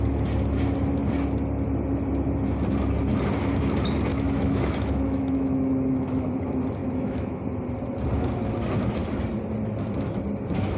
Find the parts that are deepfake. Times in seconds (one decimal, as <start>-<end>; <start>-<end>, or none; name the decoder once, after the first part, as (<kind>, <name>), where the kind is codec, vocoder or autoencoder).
4.1-6.3 (autoencoder, DAC-VAE); 6.8-7.4